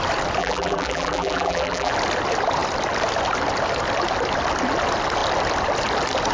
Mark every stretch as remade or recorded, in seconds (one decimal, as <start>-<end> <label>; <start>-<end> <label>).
0.0-0.4 recorded; 0.4-1.9 remade; 1.9-6.3 recorded